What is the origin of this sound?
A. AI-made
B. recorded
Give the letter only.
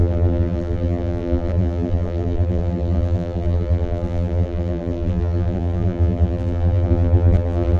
A